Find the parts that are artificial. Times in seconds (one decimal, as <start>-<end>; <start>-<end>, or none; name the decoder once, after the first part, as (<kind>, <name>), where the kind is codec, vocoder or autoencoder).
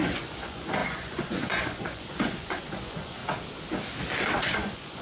0.0-3.2 (vocoder, Vocos); 4.4-5.0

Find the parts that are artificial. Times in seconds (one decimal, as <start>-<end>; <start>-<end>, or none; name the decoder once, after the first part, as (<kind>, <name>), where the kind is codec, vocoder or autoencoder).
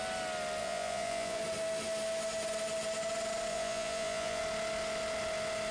0.6-1.4 (vocoder, Vocos); 3.5-4.4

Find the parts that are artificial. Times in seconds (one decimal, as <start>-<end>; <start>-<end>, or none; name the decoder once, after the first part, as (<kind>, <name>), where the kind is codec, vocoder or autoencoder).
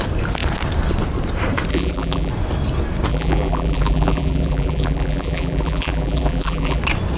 1.7-2.3 (vocoder, BigVGAN v2); 3.1-6.8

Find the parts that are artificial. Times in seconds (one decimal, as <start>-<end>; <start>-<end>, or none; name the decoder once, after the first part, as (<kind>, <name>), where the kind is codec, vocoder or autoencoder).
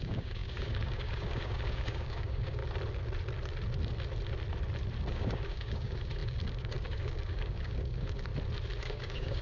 0.0-2.6 (codec, DAC); 5.1-8.3; 8.8-9.4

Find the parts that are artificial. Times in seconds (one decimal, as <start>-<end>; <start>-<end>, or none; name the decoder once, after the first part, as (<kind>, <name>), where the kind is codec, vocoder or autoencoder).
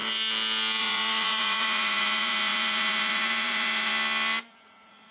0.8-3.9 (vocoder, Vocos); 4.5-5.1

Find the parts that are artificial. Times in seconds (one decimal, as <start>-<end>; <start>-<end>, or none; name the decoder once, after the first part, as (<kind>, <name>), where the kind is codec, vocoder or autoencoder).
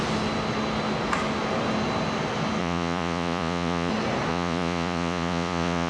2.6-3.9 (vocoder, Vocos); 4.3-5.9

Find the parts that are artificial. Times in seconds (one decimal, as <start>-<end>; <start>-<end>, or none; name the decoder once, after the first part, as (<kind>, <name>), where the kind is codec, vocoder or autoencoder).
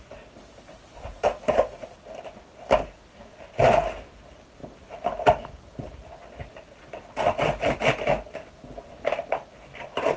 none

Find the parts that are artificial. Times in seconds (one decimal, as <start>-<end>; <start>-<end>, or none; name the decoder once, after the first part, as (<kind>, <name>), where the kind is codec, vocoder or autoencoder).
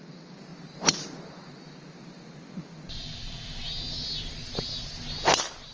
none